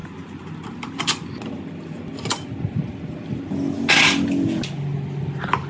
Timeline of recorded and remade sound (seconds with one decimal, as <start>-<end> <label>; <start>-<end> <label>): 0.0-5.7 recorded